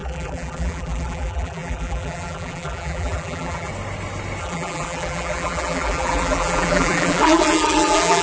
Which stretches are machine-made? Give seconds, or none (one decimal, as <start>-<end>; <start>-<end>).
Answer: 0.0-3.7; 4.4-8.2